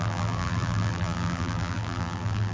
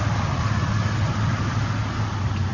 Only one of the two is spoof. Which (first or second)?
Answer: first